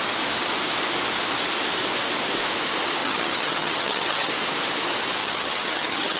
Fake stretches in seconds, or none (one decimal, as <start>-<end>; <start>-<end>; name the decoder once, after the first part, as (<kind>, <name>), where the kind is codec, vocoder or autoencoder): 3.0-4.3 (vocoder, HiFi-GAN); 5.2-6.2